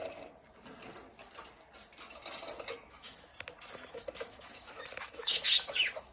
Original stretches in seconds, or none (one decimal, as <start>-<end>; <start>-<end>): 0.0-2.7; 3.3-3.9